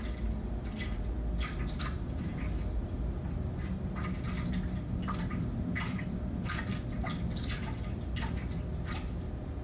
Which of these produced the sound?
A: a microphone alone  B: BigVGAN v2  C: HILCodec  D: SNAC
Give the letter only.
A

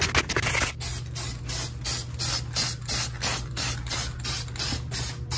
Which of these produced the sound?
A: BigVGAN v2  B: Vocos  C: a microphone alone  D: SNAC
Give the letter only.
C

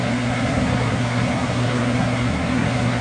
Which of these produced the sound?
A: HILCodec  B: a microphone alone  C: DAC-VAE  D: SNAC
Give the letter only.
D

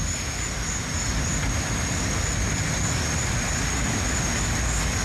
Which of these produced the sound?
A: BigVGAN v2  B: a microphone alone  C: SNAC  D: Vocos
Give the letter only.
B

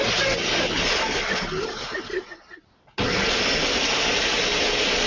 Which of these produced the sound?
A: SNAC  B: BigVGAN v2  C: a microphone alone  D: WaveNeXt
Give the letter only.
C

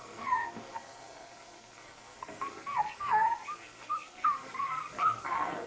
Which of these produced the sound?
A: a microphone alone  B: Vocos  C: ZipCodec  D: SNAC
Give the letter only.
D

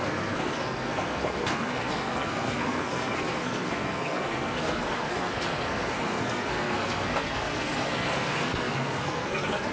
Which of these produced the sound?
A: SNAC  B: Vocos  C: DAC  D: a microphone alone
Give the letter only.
A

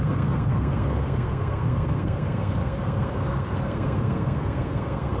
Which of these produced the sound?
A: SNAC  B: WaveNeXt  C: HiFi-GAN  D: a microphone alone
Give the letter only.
A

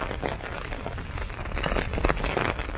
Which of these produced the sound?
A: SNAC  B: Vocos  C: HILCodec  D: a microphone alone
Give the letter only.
D